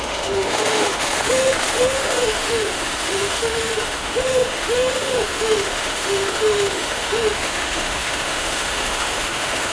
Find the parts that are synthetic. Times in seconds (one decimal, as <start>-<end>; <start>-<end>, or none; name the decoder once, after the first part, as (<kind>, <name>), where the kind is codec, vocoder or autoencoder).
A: 0.0-9.7 (autoencoder, DAC-VAE)